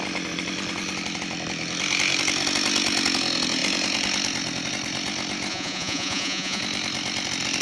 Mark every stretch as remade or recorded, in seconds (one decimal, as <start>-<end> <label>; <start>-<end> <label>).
0.0-5.5 recorded; 5.5-6.6 remade; 6.6-7.6 recorded